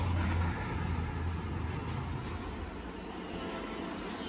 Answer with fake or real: real